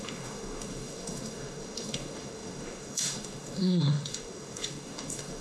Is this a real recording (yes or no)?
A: no